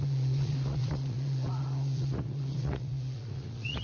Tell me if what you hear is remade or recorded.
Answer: remade